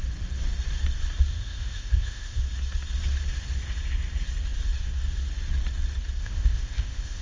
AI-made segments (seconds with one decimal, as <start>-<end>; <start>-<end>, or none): 1.3-2.4; 6.2-7.2